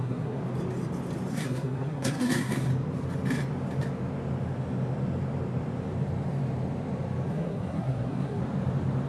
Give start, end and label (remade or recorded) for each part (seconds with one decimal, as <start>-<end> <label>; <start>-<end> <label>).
0.0-0.4 remade; 0.4-1.3 recorded; 1.3-2.7 remade; 2.7-7.3 recorded; 7.3-8.4 remade; 8.4-9.1 recorded